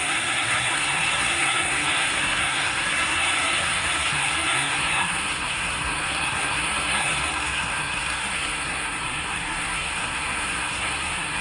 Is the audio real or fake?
fake